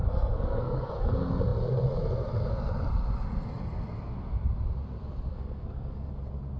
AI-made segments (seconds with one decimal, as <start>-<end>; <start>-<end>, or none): 0.0-0.9; 5.3-6.1